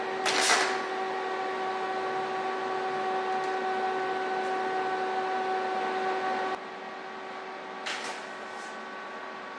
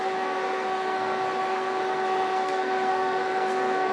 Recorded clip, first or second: first